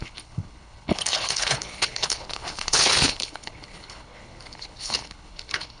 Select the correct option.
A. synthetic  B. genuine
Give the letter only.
A